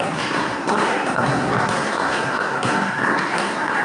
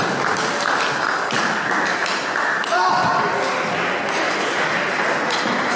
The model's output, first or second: first